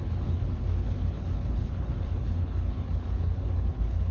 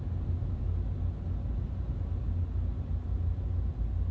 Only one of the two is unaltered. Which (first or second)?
second